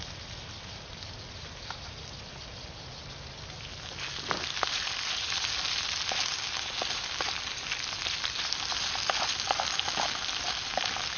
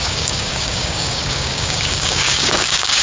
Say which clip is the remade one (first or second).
second